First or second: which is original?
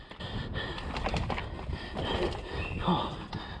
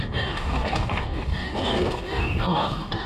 first